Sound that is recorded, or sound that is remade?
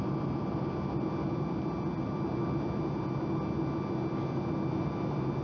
recorded